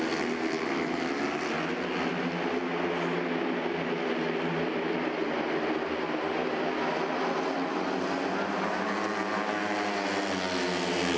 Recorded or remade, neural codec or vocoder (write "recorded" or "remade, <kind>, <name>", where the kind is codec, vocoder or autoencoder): recorded